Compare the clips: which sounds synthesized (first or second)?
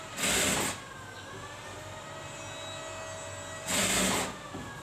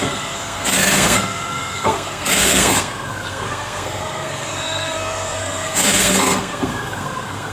second